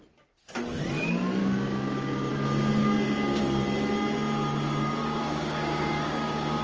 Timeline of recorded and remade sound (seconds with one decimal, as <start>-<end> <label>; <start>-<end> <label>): 0.0-1.4 recorded; 1.4-2.3 remade; 2.3-2.8 recorded; 2.8-3.4 remade; 3.4-5.0 recorded; 5.0-6.6 remade